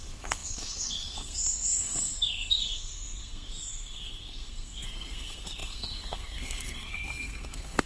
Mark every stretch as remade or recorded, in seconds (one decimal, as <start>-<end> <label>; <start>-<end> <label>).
0.0-7.9 remade